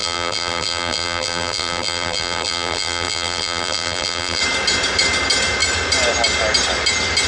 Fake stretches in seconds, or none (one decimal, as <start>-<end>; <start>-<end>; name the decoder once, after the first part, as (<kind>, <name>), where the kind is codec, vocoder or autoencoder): 0.0-4.4 (vocoder, BigVGAN v2)